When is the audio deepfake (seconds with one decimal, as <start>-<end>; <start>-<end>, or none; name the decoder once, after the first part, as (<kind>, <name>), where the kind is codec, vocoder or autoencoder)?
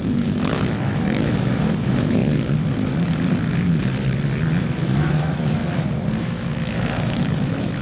0.0-2.2 (autoencoder, DAC-VAE); 4.6-5.6; 6.2-7.8